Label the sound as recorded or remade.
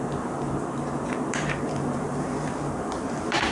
remade